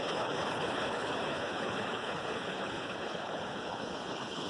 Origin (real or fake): fake